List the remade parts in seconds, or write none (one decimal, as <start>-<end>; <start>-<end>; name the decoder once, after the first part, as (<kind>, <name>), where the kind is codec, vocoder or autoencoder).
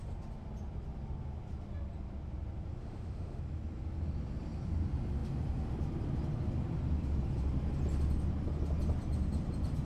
2.8-3.4 (autoencoder, DAC-VAE)